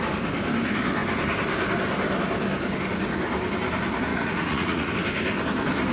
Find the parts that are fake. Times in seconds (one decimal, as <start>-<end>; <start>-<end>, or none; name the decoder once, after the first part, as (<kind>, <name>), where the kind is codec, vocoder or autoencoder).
4.1-4.9 (vocoder, Vocos)